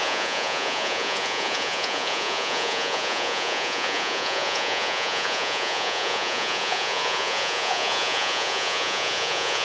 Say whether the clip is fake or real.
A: fake